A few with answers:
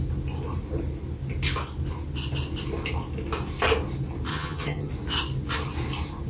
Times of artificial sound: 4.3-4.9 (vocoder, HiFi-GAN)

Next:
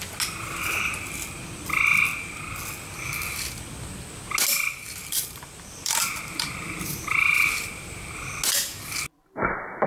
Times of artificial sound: 5.0-8.0 (vocoder, BigVGAN v2)

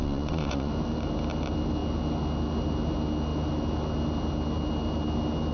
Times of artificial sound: 0.0-0.7 (vocoder, Vocos)

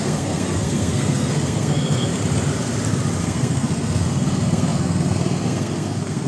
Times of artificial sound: 0.0-2.1 (codec, SNAC); 3.2-6.3